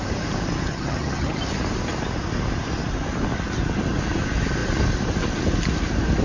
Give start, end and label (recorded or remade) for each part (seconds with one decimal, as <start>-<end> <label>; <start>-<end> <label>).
0.0-0.7 recorded; 0.7-1.4 remade; 1.4-6.2 recorded